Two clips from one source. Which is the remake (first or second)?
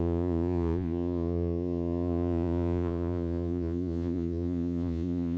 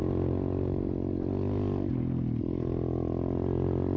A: first